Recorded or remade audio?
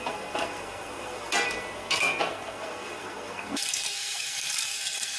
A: remade